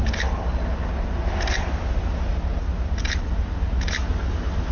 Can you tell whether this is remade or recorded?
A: recorded